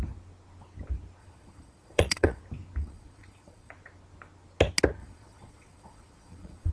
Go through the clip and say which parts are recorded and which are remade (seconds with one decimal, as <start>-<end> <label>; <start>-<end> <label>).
0.0-1.2 recorded; 1.2-2.4 remade; 2.4-2.8 recorded; 2.8-3.7 remade; 3.7-5.0 recorded; 5.0-6.7 remade